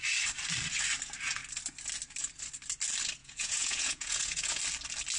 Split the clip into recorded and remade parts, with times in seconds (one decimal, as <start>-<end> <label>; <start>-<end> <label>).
0.0-3.2 recorded; 3.2-4.6 remade; 4.6-5.2 recorded